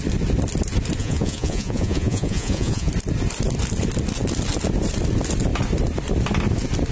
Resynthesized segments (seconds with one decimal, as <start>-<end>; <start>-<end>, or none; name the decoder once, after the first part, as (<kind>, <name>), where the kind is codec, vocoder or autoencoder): 1.0-2.9 (vocoder, Vocos)